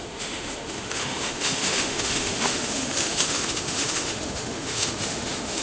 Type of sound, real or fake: fake